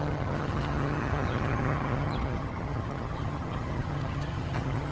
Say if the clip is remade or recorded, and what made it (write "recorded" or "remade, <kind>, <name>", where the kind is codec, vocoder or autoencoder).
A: remade, vocoder, HiFi-GAN